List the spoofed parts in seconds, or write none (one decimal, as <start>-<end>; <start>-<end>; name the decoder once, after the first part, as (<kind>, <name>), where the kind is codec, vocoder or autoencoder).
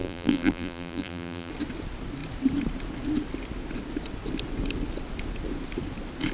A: 0.0-1.5 (vocoder, BigVGAN v2)